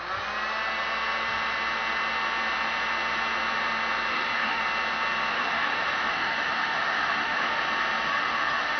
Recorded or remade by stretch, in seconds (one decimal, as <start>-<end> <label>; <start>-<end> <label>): 0.0-4.1 recorded; 4.1-4.6 remade; 4.6-5.3 recorded; 5.3-7.6 remade; 7.6-8.1 recorded; 8.1-8.8 remade